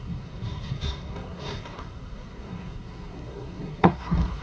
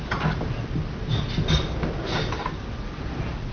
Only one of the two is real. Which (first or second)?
second